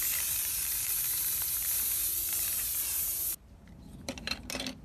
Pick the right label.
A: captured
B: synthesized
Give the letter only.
B